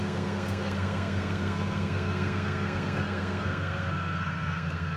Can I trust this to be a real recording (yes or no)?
no